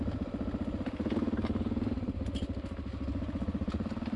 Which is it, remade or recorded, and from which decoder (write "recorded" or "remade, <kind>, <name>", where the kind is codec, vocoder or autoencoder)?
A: recorded